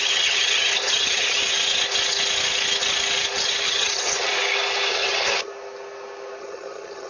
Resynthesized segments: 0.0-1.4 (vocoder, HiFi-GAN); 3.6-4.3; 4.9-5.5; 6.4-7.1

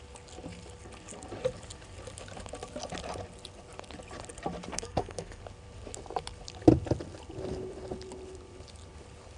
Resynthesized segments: 4.7-5.4 (codec, SNAC)

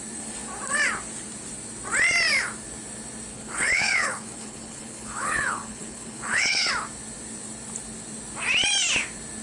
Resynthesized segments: 3.3-6.7 (codec, HILCodec)

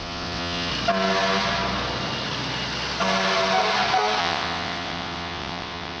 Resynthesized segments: 0.0-0.7 (vocoder, WaveNeXt); 4.2-6.0

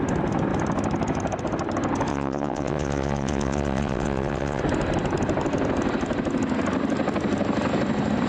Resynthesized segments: 2.1-4.6 (vocoder, WaveNeXt)

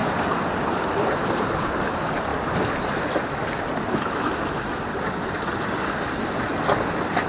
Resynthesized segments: none